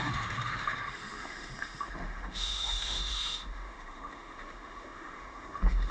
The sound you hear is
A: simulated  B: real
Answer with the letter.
A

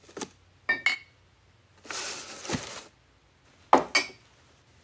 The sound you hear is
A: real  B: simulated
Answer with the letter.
A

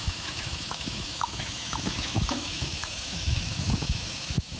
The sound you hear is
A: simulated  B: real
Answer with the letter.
A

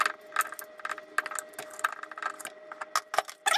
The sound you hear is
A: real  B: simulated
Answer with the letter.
A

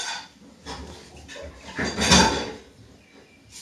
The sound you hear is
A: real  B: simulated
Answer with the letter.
A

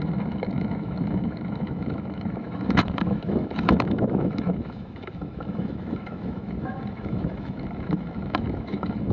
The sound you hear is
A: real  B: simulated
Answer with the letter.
B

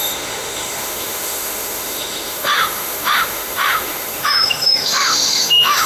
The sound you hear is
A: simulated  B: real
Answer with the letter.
A